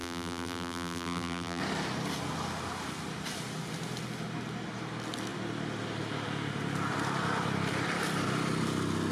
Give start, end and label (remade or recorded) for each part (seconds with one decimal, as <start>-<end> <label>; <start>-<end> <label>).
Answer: 0.0-1.6 remade; 1.6-9.1 recorded